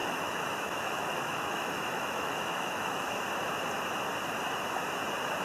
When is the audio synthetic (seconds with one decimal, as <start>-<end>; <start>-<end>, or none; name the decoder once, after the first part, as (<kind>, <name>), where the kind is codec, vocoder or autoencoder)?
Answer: 0.0-3.2 (autoencoder, DAC-VAE)